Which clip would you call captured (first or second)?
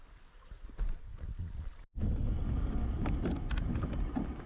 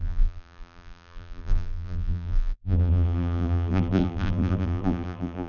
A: first